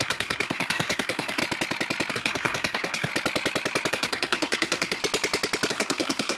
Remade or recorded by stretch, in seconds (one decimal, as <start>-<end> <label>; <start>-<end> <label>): 0.0-1.4 remade; 1.4-2.1 recorded; 2.1-3.1 remade; 3.1-3.9 recorded; 3.9-5.0 remade; 5.0-5.7 recorded; 5.7-6.4 remade